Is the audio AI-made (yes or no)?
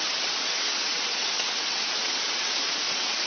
yes